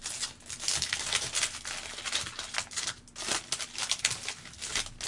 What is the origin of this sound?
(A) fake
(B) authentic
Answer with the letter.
B